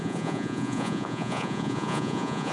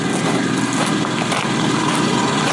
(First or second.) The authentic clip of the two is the second